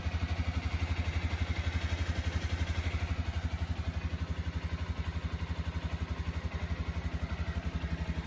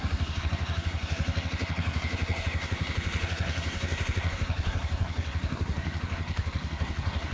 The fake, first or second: second